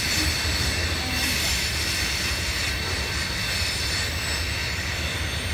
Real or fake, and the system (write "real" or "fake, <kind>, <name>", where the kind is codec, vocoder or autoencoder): real